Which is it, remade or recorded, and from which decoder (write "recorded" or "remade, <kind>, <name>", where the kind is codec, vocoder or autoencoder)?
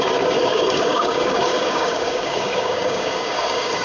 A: remade, codec, DAC